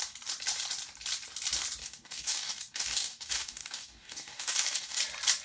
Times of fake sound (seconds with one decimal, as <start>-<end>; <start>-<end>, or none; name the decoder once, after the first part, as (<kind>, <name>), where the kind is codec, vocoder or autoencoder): 1.8-5.0 (codec, DAC)